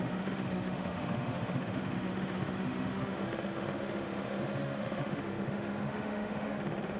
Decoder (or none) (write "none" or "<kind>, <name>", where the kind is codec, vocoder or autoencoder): autoencoder, DAC-VAE